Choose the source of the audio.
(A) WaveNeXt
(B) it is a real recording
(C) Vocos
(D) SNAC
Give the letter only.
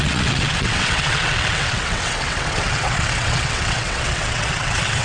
A